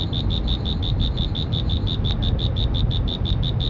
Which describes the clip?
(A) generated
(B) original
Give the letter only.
B